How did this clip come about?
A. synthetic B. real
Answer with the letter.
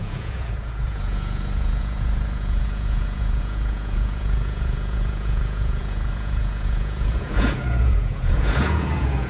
A